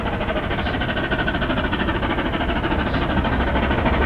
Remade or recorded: recorded